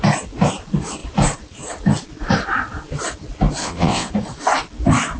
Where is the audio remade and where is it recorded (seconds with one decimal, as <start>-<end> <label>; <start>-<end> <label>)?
0.0-3.6 recorded; 3.6-4.1 remade; 4.1-5.2 recorded